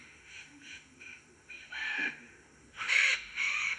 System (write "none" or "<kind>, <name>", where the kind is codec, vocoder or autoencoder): autoencoder, DAC-VAE